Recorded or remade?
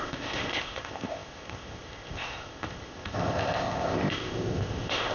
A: remade